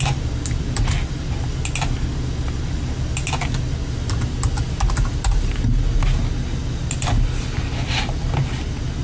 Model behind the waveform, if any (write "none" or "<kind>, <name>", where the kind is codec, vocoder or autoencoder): none